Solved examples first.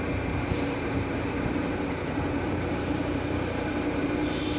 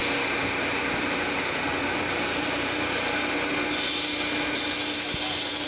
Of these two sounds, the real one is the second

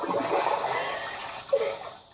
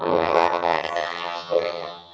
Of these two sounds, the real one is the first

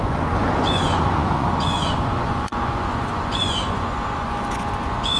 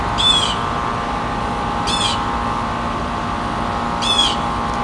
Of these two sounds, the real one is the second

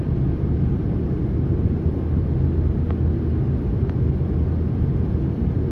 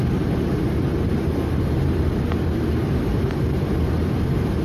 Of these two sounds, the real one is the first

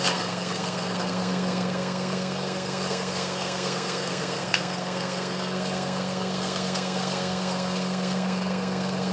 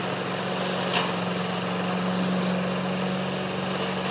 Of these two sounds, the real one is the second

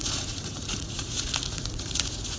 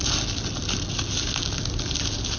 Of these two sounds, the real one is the second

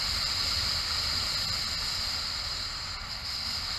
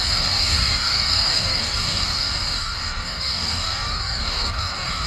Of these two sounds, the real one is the first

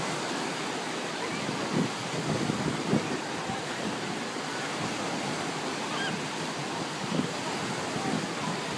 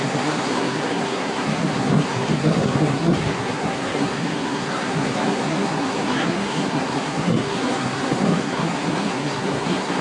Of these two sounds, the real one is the first